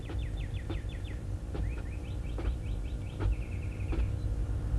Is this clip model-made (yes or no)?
yes